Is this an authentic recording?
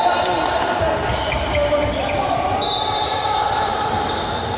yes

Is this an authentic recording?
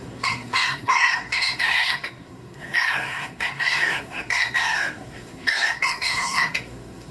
no